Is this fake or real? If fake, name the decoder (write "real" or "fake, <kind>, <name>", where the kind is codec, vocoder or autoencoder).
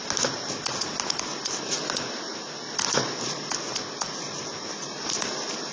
real